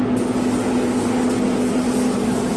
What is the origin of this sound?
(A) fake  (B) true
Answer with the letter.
B